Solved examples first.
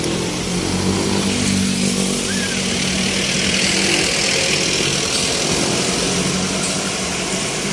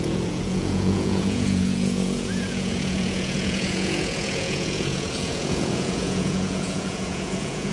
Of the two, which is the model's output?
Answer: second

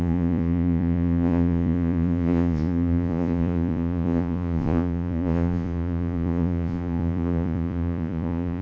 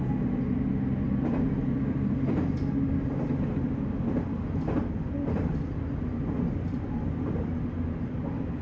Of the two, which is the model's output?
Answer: first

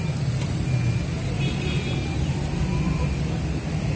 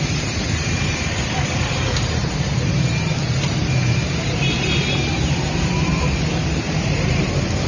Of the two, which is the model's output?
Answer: second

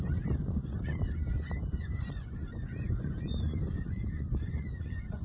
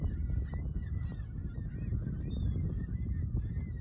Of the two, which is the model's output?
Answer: first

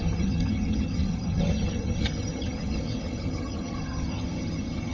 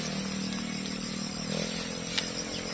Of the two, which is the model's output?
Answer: first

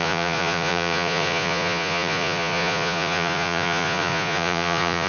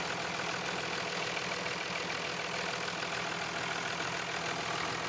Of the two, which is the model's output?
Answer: first